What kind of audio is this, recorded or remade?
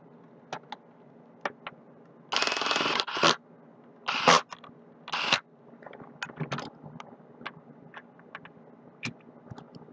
recorded